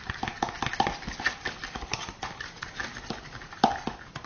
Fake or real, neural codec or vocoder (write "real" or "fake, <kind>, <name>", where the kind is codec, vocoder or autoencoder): real